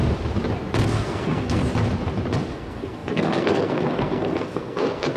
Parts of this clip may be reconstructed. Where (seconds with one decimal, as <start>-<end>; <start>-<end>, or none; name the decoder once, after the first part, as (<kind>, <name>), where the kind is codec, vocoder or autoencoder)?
0.8-1.6 (codec, SNAC); 2.5-5.2